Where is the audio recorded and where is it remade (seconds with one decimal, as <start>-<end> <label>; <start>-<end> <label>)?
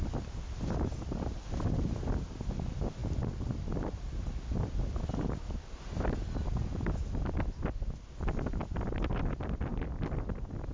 0.0-10.7 recorded